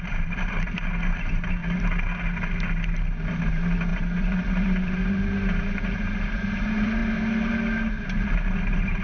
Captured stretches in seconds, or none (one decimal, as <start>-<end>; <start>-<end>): 1.6-3.5